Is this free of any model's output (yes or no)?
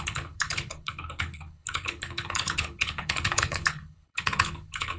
no